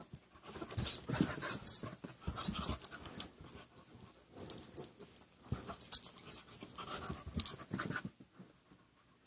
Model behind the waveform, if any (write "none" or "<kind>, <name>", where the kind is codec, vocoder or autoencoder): none